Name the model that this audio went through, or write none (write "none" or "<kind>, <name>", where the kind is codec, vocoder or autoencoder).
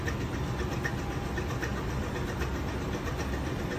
none